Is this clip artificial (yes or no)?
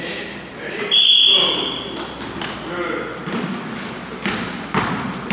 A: no